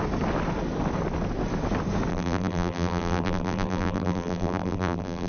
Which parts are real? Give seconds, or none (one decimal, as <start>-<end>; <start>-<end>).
0.0-2.1